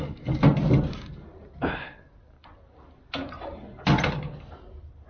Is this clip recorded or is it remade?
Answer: recorded